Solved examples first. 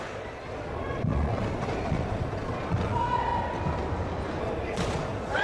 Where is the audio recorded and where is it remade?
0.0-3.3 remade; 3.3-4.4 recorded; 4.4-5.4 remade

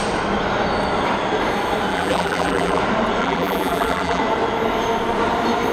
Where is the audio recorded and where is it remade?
0.0-1.9 recorded; 1.9-2.8 remade; 2.8-3.2 recorded; 3.2-4.2 remade; 4.2-5.7 recorded

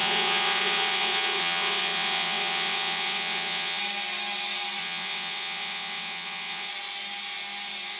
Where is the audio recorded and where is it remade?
0.0-3.8 remade; 3.8-4.8 recorded; 4.8-6.7 remade; 6.7-8.0 recorded